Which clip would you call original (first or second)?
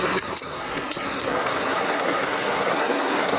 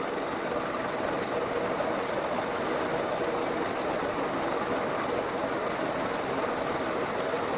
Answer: second